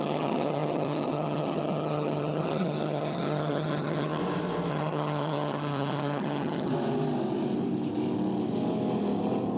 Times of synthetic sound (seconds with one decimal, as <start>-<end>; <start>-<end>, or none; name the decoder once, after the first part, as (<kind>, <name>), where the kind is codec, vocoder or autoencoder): 0.0-4.2 (vocoder, HiFi-GAN); 4.7-6.7